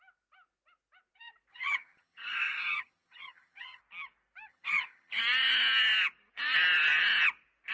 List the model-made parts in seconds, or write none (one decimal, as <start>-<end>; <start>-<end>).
1.5-3.8; 4.5-5.2